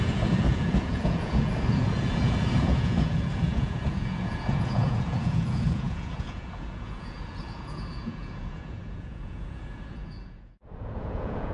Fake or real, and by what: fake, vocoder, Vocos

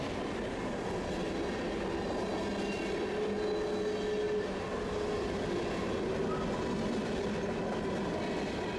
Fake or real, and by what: real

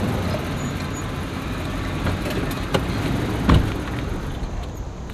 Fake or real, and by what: real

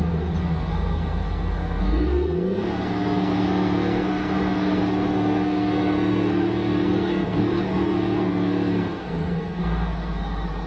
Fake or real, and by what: fake, codec, SNAC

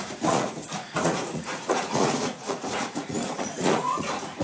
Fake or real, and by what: fake, vocoder, Vocos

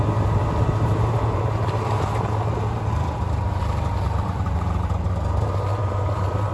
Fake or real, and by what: fake, vocoder, BigVGAN v2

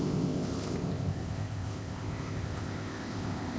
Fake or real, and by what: fake, codec, ZipCodec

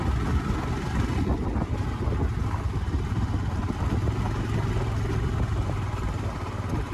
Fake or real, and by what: real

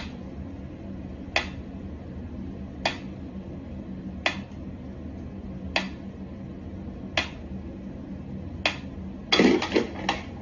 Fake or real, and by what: real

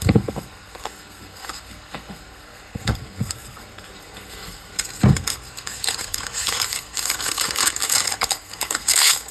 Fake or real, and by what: fake, codec, SNAC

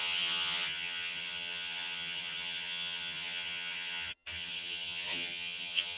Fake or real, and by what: fake, vocoder, HiFi-GAN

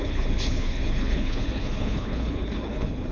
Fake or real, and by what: fake, codec, HILCodec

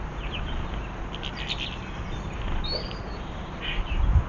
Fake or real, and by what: real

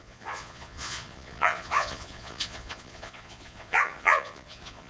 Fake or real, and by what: fake, vocoder, Vocos